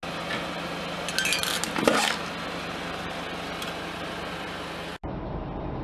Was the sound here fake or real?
real